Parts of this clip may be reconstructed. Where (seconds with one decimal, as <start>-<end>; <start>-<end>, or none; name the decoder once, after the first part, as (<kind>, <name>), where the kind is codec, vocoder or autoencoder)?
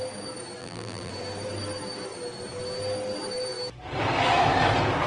0.6-1.1 (vocoder, BigVGAN v2)